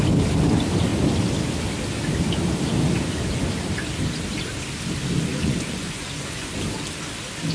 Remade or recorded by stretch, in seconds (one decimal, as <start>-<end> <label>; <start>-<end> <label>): 0.0-5.3 recorded; 5.3-6.5 remade; 6.5-7.5 recorded